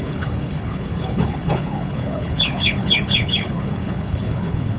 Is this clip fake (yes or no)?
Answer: yes